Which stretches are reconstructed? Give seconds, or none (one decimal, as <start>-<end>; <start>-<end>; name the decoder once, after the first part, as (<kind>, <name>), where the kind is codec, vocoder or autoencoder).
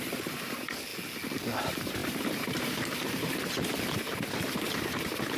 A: 0.0-0.9 (vocoder, BigVGAN v2); 1.6-5.4